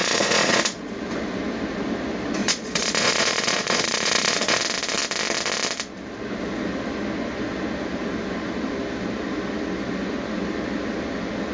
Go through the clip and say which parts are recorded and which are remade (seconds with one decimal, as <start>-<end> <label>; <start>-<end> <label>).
0.0-0.9 remade; 0.9-2.4 recorded; 2.4-4.6 remade; 4.6-11.5 recorded